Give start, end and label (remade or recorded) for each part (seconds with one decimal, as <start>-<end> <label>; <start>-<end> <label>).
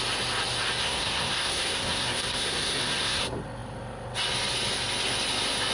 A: 0.0-0.8 recorded; 0.8-3.2 remade; 3.2-5.7 recorded